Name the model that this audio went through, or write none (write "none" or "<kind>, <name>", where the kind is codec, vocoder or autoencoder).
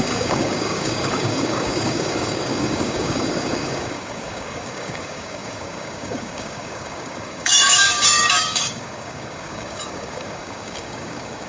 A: codec, DAC